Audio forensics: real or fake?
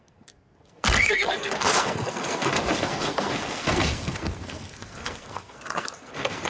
fake